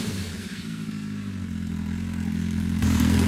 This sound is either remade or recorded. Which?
remade